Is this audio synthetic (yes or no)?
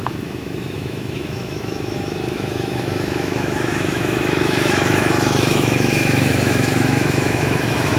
yes